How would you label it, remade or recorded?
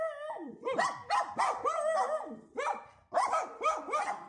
recorded